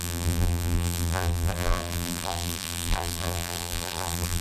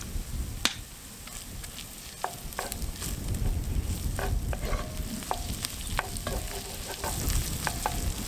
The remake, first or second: first